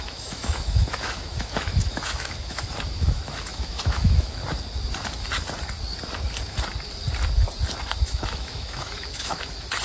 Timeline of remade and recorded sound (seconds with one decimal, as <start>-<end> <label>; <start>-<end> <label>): 0.0-4.4 remade; 4.4-8.0 recorded; 8.0-9.8 remade